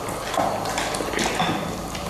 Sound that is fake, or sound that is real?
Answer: real